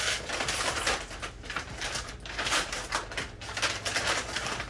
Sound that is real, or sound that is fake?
real